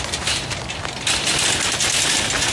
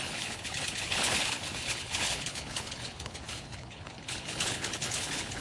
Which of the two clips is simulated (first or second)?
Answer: second